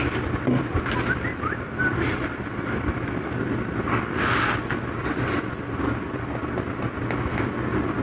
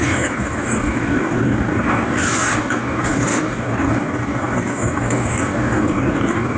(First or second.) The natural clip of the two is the first